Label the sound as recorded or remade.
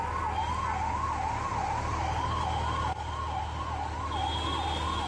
recorded